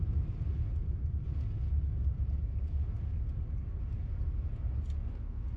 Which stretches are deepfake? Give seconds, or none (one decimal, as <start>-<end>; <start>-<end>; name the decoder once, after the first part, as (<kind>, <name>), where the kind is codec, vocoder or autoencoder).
0.8-1.5 (vocoder, BigVGAN v2)